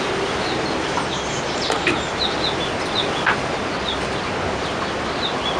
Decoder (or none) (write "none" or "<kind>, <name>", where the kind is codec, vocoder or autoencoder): none